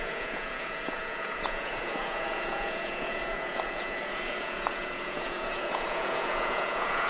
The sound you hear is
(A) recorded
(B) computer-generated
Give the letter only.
B